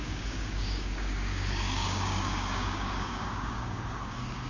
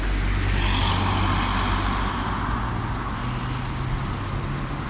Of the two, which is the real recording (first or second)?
second